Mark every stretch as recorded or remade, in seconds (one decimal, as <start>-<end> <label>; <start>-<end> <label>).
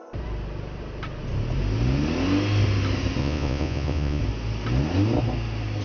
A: 0.0-3.2 recorded; 3.2-4.2 remade; 4.2-5.8 recorded